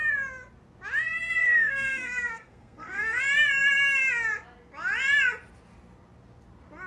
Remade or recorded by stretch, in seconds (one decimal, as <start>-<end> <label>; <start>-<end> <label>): 0.0-1.4 recorded; 1.4-3.2 remade; 3.2-6.9 recorded